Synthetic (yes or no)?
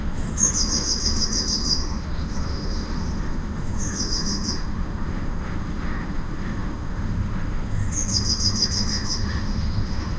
yes